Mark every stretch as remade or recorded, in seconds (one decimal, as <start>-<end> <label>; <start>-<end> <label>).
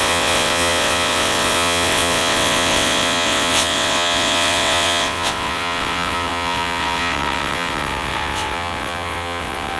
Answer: 0.0-9.8 remade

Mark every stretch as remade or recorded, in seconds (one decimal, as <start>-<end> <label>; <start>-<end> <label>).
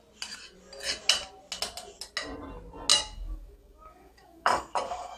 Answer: 0.0-2.9 recorded; 2.9-5.2 remade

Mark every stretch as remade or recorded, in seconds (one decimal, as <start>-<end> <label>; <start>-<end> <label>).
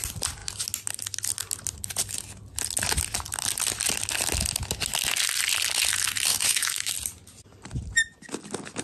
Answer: 0.0-6.3 recorded; 6.3-6.9 remade; 6.9-8.8 recorded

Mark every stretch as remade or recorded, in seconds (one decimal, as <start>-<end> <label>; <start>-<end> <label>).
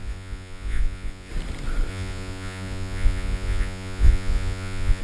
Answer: 0.0-1.3 remade; 1.3-1.9 recorded; 1.9-5.0 remade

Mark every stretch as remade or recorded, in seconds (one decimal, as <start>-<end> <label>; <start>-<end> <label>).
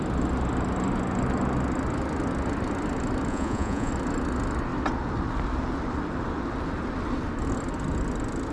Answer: 0.0-3.3 recorded; 3.3-3.9 remade; 3.9-8.5 recorded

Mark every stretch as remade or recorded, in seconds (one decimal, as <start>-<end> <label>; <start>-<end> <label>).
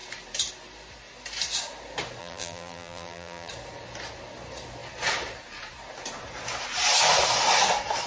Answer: 0.0-2.2 recorded; 2.2-3.5 remade; 3.5-8.1 recorded